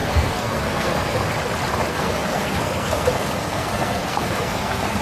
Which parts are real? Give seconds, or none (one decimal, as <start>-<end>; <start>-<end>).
1.3-1.9